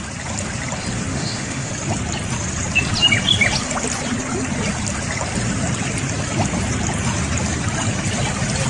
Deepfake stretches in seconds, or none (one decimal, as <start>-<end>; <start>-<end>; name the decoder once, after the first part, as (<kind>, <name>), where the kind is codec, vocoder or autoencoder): 1.1-1.7 (autoencoder, DAC-VAE)